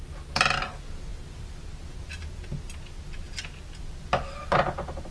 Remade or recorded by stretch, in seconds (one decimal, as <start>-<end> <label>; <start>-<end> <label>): 0.0-5.1 recorded